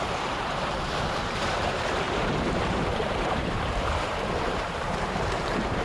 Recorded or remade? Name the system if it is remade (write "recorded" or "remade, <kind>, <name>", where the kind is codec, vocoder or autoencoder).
remade, vocoder, BigVGAN v2